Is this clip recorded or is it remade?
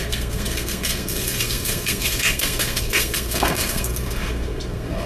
remade